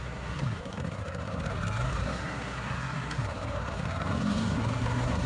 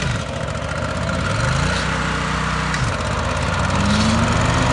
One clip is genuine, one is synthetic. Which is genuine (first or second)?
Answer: second